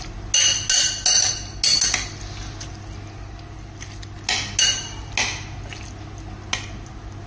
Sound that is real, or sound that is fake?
real